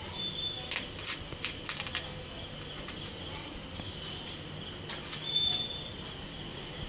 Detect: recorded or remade recorded